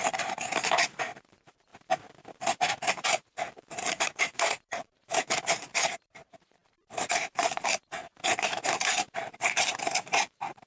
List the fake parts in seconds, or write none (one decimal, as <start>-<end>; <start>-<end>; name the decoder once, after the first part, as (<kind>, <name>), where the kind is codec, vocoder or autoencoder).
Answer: 0.0-1.7 (vocoder, BigVGAN v2); 2.9-10.7